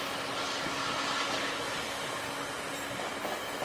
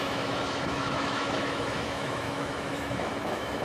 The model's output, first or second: second